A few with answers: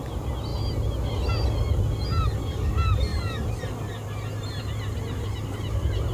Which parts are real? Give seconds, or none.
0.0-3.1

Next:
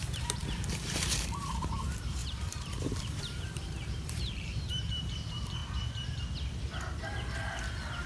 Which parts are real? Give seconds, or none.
5.6-8.1

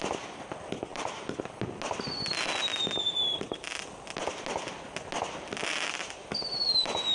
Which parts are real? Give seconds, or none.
0.0-0.9; 1.4-7.1

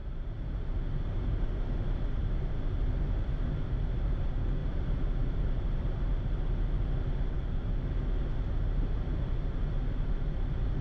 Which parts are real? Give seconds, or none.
1.6-4.6; 6.1-10.8

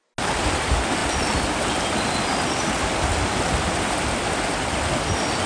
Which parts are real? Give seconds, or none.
0.0-5.5